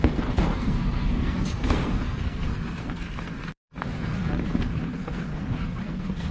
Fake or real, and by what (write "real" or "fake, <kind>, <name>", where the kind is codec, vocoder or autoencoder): fake, codec, SNAC